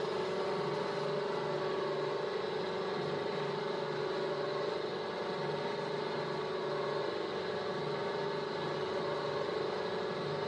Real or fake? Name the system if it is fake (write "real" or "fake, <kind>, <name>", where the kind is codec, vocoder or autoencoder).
real